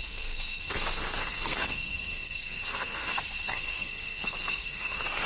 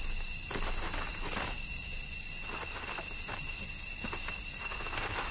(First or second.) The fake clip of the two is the first